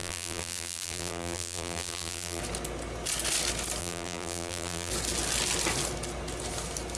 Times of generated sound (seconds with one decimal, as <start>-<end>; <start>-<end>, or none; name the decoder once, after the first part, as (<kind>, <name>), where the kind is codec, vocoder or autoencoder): 0.0-2.4 (vocoder, BigVGAN v2); 3.8-4.9